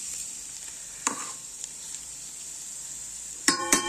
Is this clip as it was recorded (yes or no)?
no